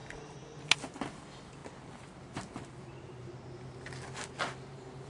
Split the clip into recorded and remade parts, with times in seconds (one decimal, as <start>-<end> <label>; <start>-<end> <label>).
0.0-0.6 remade; 0.6-5.1 recorded